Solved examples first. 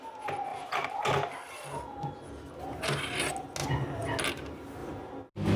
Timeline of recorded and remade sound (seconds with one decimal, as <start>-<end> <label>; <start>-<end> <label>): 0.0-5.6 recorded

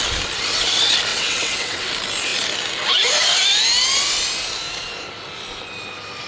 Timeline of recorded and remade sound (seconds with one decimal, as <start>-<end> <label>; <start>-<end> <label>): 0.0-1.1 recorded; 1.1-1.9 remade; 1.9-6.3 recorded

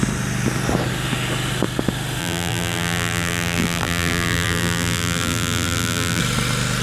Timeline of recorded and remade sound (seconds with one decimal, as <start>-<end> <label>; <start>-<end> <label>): 0.0-2.2 recorded; 2.2-6.2 remade; 6.2-6.8 recorded